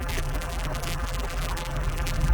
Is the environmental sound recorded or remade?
remade